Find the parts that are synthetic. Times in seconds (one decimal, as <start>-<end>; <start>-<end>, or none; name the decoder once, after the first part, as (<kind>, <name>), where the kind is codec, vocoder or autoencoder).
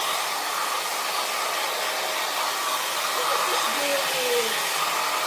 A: none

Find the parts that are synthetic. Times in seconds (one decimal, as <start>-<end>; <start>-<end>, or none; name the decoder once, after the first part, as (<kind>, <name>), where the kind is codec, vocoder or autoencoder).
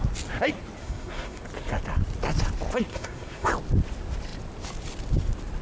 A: 0.8-1.4 (codec, SNAC); 2.9-3.5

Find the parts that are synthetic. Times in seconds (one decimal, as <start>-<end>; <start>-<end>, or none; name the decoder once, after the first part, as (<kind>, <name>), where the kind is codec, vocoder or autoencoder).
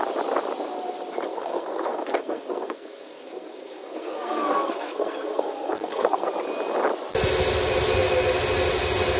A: 1.3-6.3 (codec, SNAC)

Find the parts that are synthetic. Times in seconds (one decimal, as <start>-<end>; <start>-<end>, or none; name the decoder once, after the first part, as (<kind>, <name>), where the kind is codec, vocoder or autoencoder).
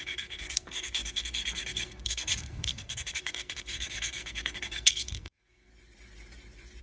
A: 0.0-5.7 (codec, SNAC)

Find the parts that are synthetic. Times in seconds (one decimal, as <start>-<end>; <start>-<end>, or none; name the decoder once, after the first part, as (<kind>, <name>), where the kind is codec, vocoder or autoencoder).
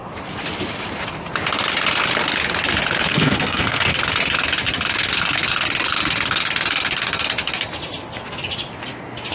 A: 3.1-3.9 (codec, SNAC)